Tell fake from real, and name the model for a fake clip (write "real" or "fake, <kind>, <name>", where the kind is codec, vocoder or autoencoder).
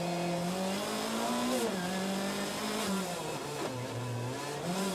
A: real